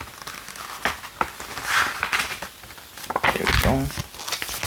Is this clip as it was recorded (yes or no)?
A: yes